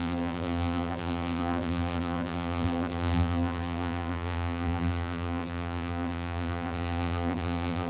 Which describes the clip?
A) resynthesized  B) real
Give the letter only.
A